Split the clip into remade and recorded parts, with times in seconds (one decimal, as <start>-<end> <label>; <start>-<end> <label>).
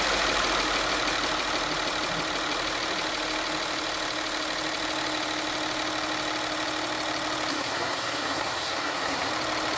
0.0-7.5 recorded; 7.5-9.3 remade; 9.3-9.8 recorded